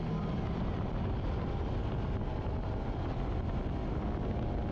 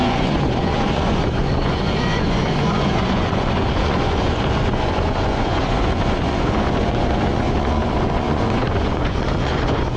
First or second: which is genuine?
first